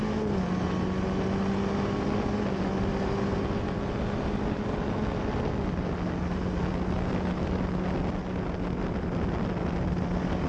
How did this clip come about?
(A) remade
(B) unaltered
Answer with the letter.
B